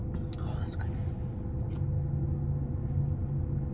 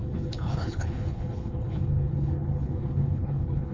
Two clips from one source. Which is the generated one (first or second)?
second